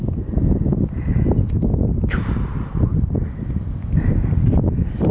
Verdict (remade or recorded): recorded